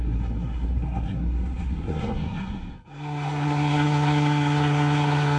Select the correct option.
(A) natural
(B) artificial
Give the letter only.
B